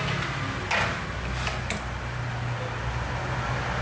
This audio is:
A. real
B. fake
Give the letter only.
A